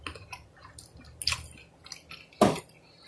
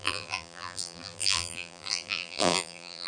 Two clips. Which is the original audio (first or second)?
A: first